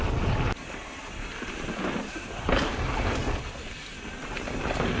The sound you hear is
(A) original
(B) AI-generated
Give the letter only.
A